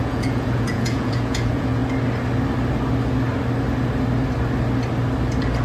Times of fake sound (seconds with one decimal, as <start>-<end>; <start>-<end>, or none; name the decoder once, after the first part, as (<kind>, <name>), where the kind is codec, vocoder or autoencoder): 0.0-1.8 (vocoder, Vocos)